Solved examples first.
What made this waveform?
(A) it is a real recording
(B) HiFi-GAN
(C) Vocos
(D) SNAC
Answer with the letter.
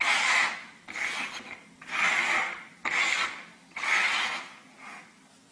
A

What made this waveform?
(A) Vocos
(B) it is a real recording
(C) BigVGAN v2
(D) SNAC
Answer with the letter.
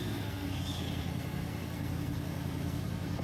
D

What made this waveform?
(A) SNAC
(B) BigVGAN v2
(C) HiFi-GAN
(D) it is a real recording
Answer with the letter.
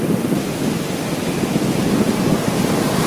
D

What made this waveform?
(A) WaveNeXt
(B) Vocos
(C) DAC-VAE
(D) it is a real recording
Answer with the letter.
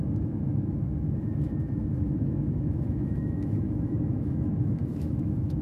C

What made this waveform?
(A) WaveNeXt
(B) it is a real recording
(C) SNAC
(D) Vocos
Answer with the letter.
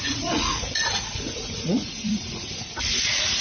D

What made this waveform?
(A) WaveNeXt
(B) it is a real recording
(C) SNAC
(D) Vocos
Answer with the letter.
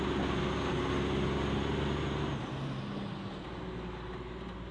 B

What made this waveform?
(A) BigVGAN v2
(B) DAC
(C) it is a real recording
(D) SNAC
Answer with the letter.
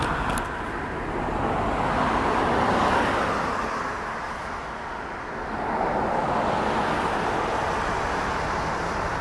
C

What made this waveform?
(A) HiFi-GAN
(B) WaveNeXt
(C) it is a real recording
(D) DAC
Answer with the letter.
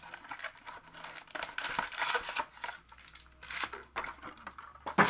C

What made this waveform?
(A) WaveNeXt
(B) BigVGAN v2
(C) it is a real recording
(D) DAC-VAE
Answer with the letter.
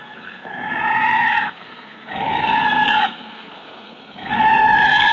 C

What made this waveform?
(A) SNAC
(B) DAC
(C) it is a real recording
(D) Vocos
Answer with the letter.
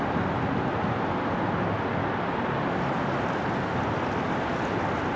C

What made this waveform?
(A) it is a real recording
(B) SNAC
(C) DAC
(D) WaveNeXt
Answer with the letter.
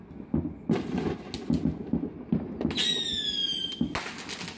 A